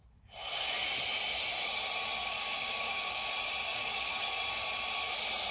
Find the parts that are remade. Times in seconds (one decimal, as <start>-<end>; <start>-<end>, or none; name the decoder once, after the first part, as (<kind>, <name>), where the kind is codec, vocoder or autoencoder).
2.2-3.3 (codec, DAC); 3.7-4.3